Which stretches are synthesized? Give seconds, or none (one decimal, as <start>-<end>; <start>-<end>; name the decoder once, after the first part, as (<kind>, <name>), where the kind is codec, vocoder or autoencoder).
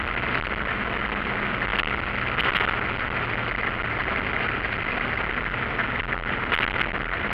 none